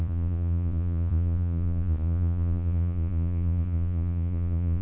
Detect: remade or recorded remade